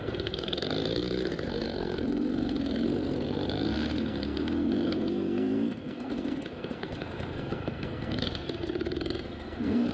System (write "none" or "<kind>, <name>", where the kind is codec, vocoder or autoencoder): codec, SNAC